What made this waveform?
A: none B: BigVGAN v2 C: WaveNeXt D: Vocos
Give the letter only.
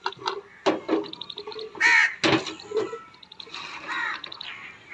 A